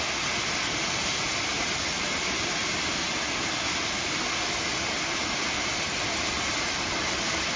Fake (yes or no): no